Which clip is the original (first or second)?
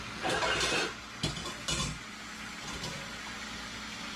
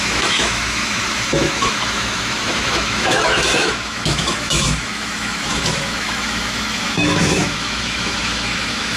first